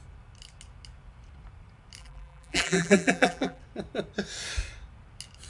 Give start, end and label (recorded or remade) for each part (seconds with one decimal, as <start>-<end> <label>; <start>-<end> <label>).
0.0-2.0 recorded; 2.0-3.6 remade; 3.6-5.5 recorded